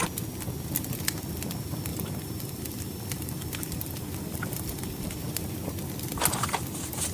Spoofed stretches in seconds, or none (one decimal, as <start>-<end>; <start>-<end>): 1.9-5.9